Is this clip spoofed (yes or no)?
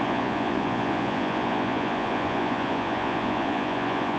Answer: yes